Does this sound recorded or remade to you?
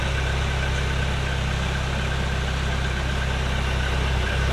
recorded